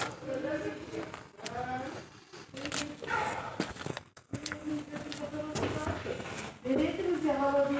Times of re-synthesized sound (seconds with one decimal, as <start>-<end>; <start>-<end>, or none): 3.9-4.7